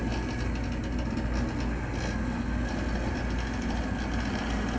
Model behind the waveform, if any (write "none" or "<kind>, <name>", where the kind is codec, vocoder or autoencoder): none